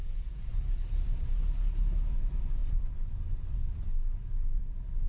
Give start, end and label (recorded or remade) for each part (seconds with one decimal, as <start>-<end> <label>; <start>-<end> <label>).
0.0-0.5 remade; 0.5-5.1 recorded